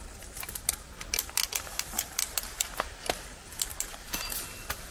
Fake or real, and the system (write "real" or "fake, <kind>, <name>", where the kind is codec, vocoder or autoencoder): real